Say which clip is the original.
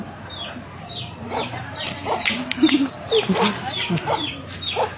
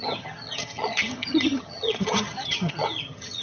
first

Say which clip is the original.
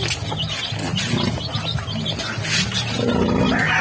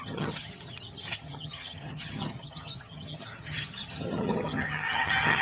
first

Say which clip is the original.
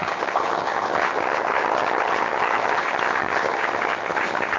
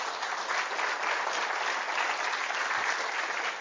second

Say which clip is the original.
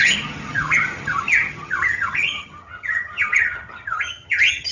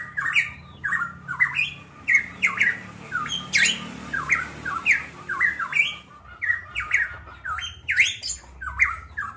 second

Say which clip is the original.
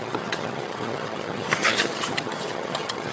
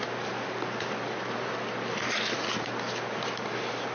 second